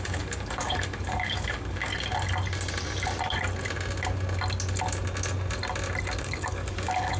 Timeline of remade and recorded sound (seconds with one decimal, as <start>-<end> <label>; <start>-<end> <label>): 0.0-1.9 remade; 1.9-6.2 recorded; 6.2-7.2 remade